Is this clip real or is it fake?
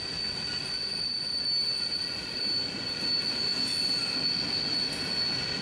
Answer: real